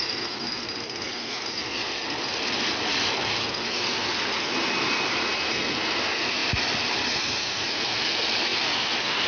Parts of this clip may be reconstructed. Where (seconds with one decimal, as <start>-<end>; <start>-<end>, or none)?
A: 6.4-7.8; 8.5-9.3